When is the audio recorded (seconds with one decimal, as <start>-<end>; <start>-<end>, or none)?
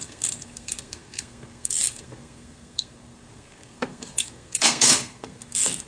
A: none